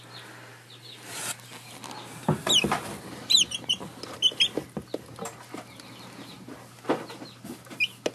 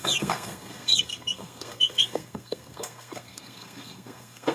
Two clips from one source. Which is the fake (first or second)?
second